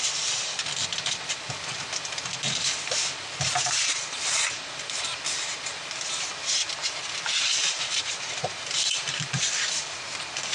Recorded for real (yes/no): no